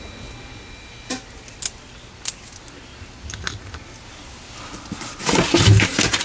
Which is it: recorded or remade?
recorded